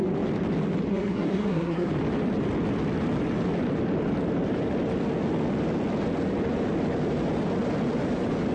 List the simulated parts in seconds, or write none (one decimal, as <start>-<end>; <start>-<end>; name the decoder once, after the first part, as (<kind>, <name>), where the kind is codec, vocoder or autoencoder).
0.9-1.9 (codec, SNAC)